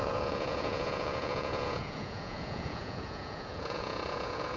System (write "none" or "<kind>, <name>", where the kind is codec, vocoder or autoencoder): vocoder, Vocos